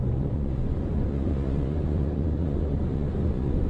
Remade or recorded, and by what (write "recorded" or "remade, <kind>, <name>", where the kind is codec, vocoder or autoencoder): remade, vocoder, Vocos